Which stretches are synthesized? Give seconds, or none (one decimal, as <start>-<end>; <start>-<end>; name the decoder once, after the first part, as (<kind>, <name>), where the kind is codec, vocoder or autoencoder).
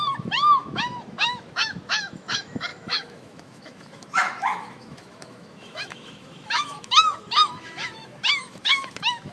0.0-9.3 (autoencoder, DAC-VAE)